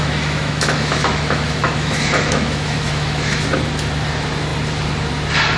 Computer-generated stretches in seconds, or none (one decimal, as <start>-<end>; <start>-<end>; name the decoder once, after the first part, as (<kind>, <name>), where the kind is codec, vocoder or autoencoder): 0.0-3.4 (autoencoder, DAC-VAE)